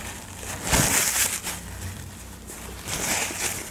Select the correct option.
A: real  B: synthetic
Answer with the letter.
A